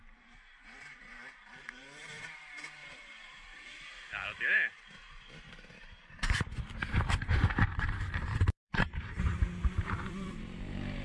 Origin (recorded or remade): remade